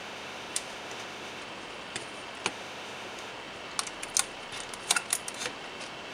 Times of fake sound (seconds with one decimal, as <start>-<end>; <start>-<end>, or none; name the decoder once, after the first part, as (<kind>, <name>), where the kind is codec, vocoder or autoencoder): 0.0-1.4 (autoencoder, DAC-VAE); 2.5-3.3